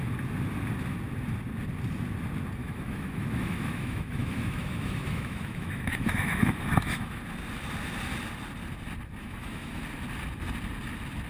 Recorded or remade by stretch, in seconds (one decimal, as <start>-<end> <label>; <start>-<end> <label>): 0.0-2.6 recorded; 2.6-7.2 remade; 7.2-9.2 recorded; 9.2-9.8 remade; 9.8-11.3 recorded